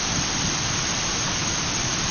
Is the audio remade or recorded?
recorded